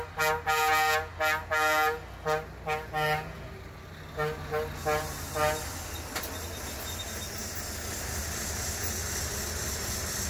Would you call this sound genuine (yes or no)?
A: yes